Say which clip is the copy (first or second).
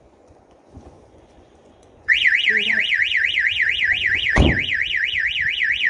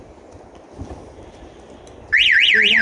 first